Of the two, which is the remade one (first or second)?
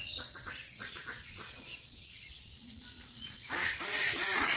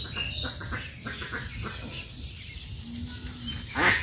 first